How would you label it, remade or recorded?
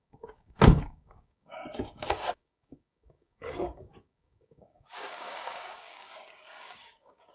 remade